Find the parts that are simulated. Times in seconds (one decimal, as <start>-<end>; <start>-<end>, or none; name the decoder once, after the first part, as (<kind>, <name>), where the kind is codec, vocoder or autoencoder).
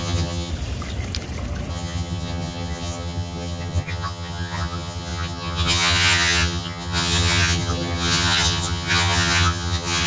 0.0-0.5 (vocoder, HiFi-GAN); 1.7-10.1